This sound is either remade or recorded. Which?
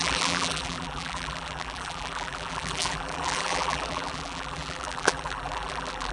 remade